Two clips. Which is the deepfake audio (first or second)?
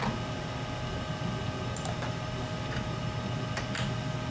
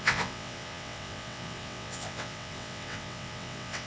second